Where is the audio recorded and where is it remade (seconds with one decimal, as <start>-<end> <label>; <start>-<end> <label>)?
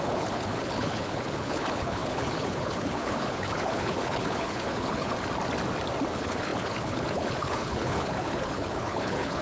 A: 0.0-5.1 remade; 5.1-6.1 recorded; 6.1-9.4 remade